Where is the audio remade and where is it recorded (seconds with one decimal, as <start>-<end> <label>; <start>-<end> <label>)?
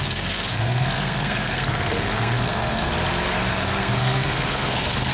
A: 0.0-2.9 remade; 2.9-3.5 recorded; 3.5-5.1 remade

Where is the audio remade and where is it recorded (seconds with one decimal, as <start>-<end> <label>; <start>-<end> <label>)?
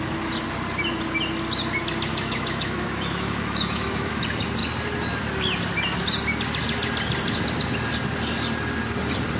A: 0.0-2.1 recorded; 2.1-4.1 remade; 4.1-9.4 recorded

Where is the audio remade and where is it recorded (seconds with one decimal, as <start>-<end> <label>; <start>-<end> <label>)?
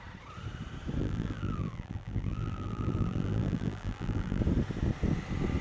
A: 0.0-1.0 recorded; 1.0-4.4 remade; 4.4-5.6 recorded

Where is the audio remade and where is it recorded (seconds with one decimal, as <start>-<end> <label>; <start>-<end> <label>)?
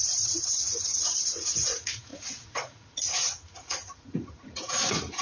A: 0.0-5.2 remade